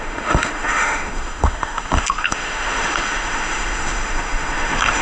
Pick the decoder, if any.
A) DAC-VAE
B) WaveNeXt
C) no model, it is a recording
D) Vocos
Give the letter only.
A